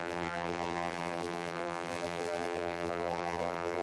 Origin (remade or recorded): remade